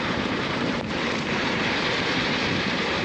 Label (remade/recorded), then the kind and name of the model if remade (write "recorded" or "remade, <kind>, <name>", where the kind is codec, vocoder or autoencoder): remade, vocoder, BigVGAN v2